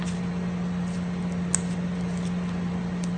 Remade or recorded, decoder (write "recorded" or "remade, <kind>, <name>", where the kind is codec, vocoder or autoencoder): recorded